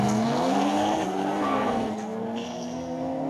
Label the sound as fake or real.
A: fake